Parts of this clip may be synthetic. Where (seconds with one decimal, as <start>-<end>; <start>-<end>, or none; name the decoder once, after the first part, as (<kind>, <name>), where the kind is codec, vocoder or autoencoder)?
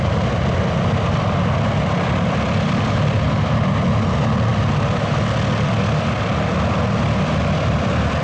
none